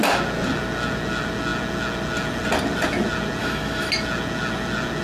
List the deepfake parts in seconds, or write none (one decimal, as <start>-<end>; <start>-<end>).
3.4-3.9